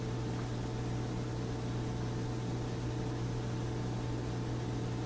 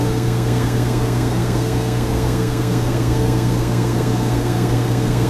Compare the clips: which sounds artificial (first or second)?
second